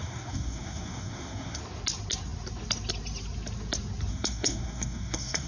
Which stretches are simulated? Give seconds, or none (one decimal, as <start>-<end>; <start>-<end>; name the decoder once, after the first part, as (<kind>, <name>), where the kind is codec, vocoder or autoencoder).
0.0-1.6 (codec, SNAC); 4.1-5.5